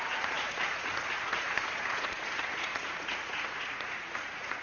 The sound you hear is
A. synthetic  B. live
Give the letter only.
A